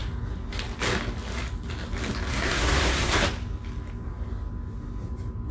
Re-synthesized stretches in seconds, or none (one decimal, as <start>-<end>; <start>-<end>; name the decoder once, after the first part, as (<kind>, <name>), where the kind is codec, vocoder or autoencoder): 2.3-3.2 (codec, SNAC)